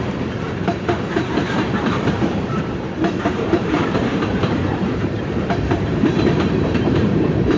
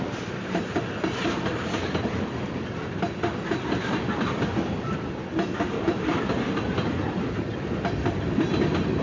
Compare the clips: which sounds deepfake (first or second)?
first